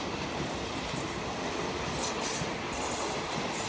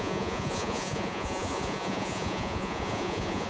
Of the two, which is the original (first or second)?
first